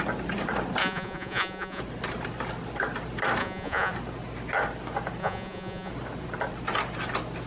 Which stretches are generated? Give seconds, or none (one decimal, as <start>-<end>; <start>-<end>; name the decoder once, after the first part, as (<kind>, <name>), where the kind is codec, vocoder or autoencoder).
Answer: 0.8-1.8 (vocoder, Vocos); 3.4-3.9; 5.2-5.9

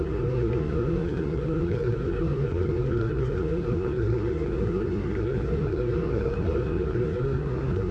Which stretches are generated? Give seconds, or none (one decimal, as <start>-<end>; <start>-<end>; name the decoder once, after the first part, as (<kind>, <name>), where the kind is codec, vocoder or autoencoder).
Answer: 0.0-7.9 (codec, SNAC)